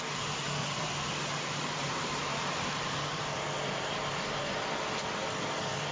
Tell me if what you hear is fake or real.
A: fake